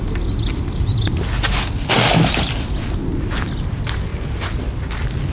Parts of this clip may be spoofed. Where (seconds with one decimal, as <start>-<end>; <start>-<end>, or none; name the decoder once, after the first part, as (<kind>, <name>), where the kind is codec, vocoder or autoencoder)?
none